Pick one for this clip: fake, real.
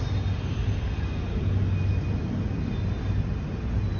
real